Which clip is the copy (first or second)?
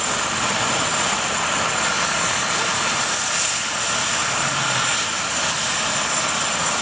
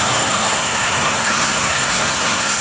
second